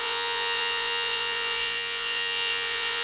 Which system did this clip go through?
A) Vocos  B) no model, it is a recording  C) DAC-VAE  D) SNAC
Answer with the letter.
A